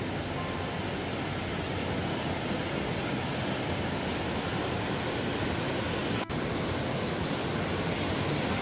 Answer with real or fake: real